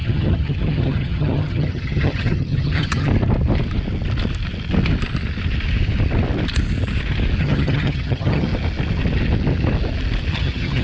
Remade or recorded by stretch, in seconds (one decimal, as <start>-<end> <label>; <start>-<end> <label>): 0.0-3.1 remade; 3.1-7.4 recorded; 7.4-8.5 remade; 8.5-10.3 recorded; 10.3-10.8 remade